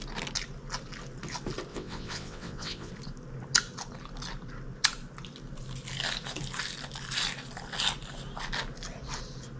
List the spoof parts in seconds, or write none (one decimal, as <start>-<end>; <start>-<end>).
1.7-2.9